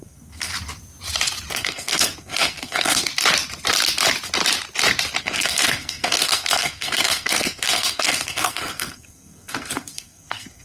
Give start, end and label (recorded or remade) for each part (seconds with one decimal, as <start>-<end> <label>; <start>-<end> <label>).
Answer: 0.0-0.5 remade; 0.5-1.5 recorded; 1.5-3.1 remade; 3.1-5.2 recorded; 5.2-10.6 remade